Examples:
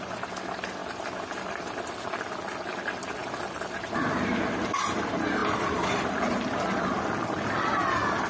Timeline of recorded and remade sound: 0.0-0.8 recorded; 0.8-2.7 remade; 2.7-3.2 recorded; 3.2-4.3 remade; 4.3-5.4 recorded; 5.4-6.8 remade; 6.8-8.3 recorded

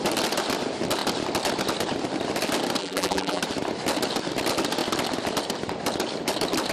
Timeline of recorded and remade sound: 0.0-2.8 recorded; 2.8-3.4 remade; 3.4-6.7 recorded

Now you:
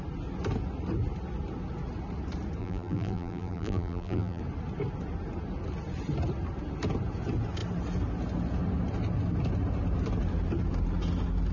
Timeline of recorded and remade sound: 0.0-2.6 recorded; 2.6-4.4 remade; 4.4-11.5 recorded

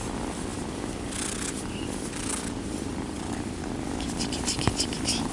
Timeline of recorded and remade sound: 0.0-0.5 recorded; 0.5-3.7 remade; 3.7-5.3 recorded

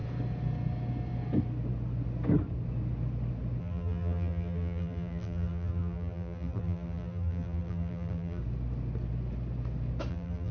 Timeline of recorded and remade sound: 0.0-3.6 recorded; 3.6-8.4 remade; 8.4-10.1 recorded; 10.1-10.5 remade